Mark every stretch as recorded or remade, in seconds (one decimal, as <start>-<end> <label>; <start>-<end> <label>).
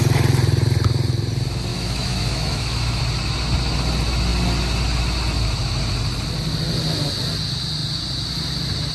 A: 0.0-1.7 recorded; 1.7-3.0 remade; 3.0-8.9 recorded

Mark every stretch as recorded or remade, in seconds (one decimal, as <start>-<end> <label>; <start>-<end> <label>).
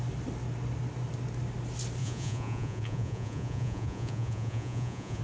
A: 0.0-2.0 recorded; 2.0-5.2 remade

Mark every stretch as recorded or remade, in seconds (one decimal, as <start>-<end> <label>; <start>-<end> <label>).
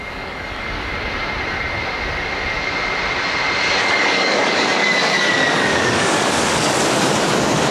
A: 0.0-0.9 remade; 0.9-3.8 recorded; 3.8-7.7 remade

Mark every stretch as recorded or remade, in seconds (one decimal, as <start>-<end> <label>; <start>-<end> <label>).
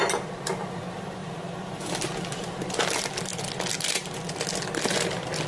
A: 0.0-1.2 recorded; 1.2-2.5 remade; 2.5-5.5 recorded